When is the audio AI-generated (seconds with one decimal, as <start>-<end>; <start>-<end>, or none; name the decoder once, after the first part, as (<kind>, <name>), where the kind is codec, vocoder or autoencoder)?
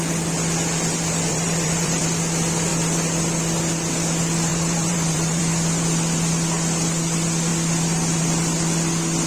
1.3-2.0 (vocoder, BigVGAN v2); 4.5-5.4